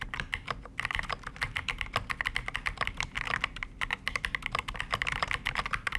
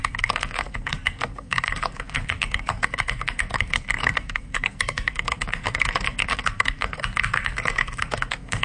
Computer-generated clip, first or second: second